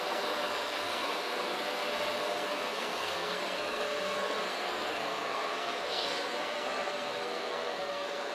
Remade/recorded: remade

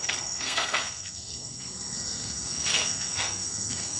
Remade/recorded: remade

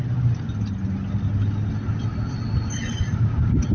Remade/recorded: recorded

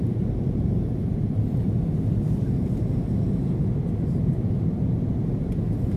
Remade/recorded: recorded